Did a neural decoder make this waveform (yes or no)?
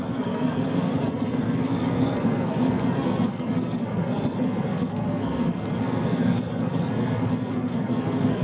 yes